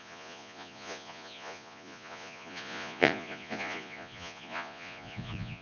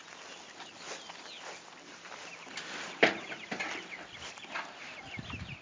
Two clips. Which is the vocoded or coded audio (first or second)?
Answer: first